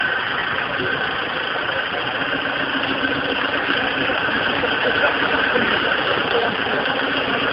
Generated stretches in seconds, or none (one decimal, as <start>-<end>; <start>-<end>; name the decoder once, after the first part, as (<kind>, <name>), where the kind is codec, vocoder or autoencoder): none